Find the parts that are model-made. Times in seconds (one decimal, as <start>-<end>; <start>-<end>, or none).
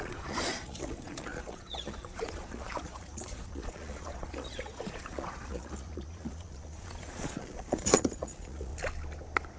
0.0-8.7